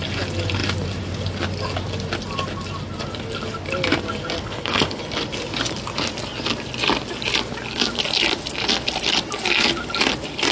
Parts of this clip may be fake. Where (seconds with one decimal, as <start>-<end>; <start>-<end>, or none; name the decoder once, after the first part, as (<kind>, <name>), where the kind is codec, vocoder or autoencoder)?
4.4-5.0 (codec, HILCodec)